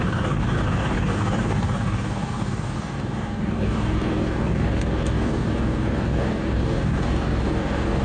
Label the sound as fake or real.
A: fake